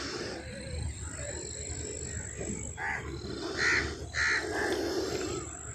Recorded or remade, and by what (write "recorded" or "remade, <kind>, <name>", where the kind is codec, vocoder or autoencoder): recorded